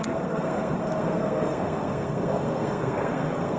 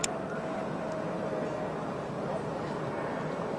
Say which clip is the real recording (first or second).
second